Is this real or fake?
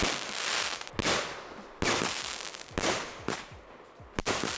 real